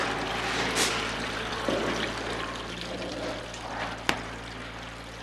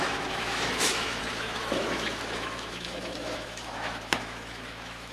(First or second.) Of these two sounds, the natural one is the first